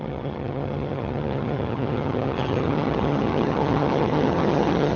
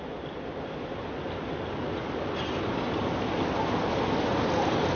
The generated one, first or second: first